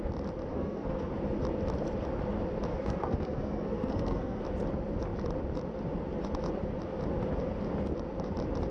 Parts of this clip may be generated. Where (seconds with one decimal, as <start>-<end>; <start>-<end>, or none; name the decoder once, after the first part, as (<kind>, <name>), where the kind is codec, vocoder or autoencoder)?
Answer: 0.5-1.1 (codec, SNAC); 2.7-4.4